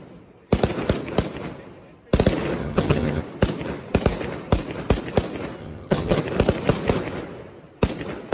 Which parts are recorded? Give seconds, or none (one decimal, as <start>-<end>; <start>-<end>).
0.0-2.6; 3.2-5.6; 6.2-8.3